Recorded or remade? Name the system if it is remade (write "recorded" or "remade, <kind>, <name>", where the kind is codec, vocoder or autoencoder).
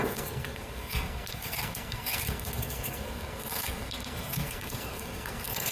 remade, codec, SNAC